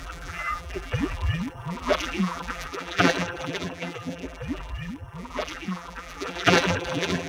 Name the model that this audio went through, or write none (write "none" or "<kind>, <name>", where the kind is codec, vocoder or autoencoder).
vocoder, BigVGAN v2